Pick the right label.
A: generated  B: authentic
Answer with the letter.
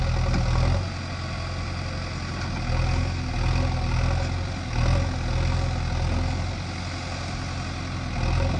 B